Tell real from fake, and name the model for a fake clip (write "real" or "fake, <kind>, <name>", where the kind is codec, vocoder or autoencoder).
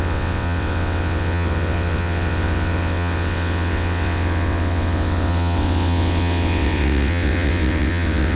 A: fake, vocoder, WaveNeXt